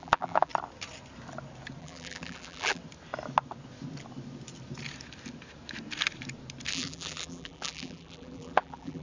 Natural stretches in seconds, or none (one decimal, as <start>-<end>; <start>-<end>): 0.5-1.8; 2.8-6.7